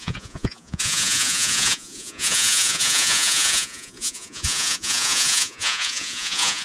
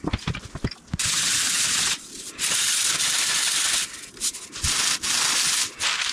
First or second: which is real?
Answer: second